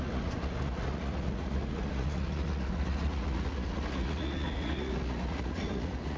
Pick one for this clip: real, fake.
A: fake